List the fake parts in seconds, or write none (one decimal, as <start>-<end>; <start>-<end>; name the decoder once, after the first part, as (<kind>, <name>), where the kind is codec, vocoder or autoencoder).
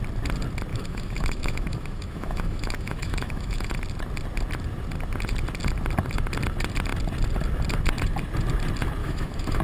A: 0.7-3.7 (autoencoder, DAC-VAE); 9.0-9.6